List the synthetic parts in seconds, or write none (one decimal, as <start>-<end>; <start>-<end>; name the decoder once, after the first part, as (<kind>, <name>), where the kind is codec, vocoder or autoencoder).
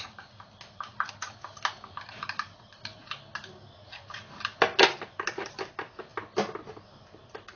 none